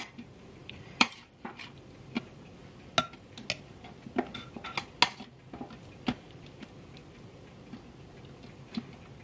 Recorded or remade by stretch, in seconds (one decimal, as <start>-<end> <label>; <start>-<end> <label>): 0.0-2.6 remade; 2.6-6.5 recorded; 6.5-7.0 remade; 7.0-8.4 recorded; 8.4-9.2 remade